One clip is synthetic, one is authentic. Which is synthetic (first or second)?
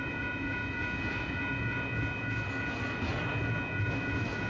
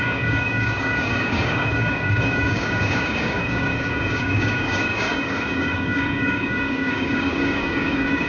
second